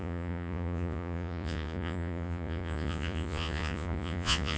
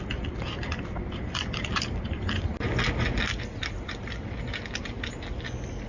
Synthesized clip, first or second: first